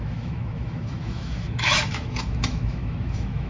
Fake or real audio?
fake